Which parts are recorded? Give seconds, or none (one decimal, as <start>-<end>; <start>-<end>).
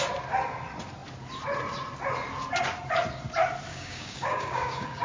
0.0-3.7